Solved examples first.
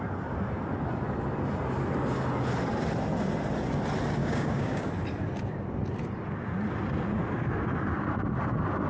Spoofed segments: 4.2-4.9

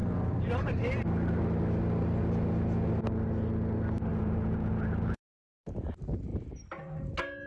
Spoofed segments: 4.1-5.8

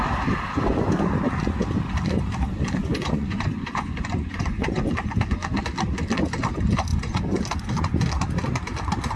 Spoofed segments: 2.9-4.9; 6.9-7.4

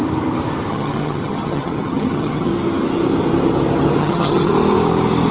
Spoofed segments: 0.7-2.5; 4.0-4.5

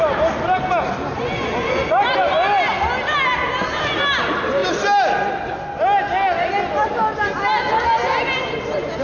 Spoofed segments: none

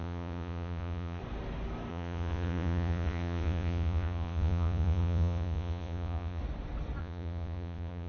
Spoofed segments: 0.0-1.2; 1.9-6.4; 7.0-8.1